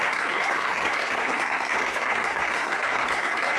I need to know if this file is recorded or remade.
remade